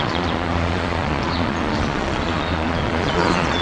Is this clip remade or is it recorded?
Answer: remade